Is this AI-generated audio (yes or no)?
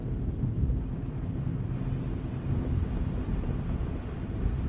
no